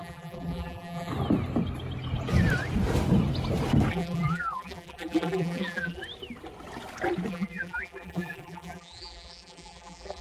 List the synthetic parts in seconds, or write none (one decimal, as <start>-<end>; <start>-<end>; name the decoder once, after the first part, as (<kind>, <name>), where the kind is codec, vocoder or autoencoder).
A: 0.0-1.1 (vocoder, BigVGAN v2); 3.9-6.0; 7.3-10.2